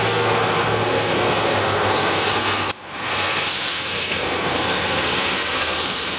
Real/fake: fake